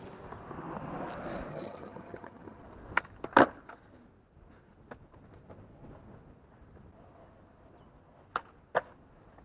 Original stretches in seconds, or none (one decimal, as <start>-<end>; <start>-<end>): 0.0-1.5; 2.6-9.4